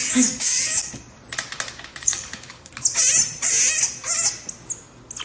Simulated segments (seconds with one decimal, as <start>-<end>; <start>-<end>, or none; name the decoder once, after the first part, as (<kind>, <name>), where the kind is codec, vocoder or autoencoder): 0.0-0.9 (codec, DAC); 1.9-2.7

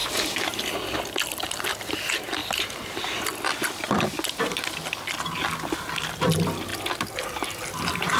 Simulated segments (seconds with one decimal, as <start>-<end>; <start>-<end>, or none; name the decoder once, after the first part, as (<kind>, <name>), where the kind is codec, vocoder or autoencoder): 0.0-0.6 (vocoder, BigVGAN v2); 2.4-3.0

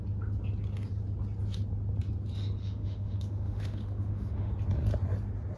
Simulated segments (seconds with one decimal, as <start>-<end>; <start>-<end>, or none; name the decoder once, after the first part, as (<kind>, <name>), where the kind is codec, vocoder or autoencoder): 2.6-4.5 (autoencoder, DAC-VAE)

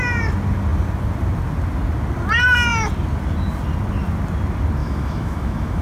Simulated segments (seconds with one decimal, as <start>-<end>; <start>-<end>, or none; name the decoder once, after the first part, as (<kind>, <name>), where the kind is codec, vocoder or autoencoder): 4.8-5.8 (autoencoder, DAC-VAE)